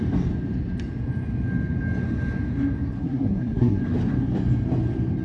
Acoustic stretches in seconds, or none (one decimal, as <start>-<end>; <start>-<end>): 0.0-3.0; 3.8-5.2